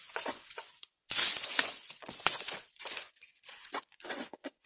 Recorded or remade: remade